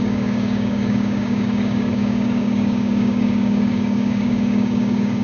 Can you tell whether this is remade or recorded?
remade